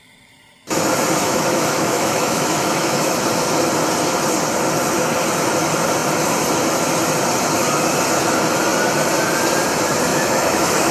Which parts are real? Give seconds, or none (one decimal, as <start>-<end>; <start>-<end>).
0.0-1.2; 3.2-10.1